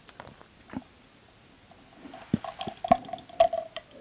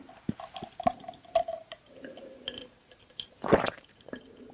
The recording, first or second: first